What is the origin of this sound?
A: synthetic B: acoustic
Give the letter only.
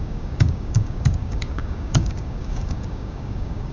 A